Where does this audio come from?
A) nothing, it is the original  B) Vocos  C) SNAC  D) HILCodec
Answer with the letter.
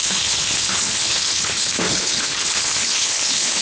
D